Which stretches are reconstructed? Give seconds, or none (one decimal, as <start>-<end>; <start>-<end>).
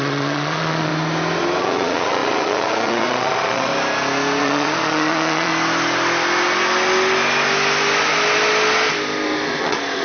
0.0-0.9; 1.6-3.7; 4.4-5.5; 9.6-10.0